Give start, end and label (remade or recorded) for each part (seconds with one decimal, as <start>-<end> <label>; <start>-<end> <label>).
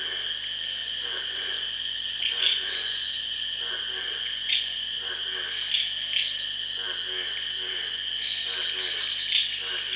0.0-0.8 recorded; 0.8-5.1 remade; 5.1-10.0 recorded